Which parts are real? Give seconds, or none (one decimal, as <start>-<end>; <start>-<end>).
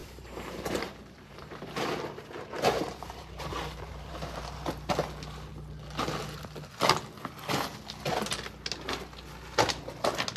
4.9-10.4